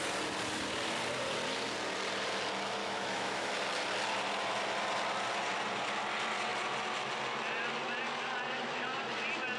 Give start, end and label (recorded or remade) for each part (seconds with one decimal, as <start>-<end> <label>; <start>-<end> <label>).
0.0-2.8 recorded; 2.8-3.5 remade; 3.5-9.6 recorded